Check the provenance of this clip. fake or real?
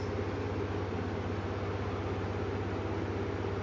real